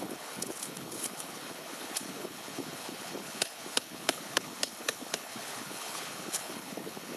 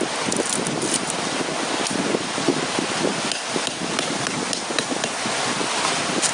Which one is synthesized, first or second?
first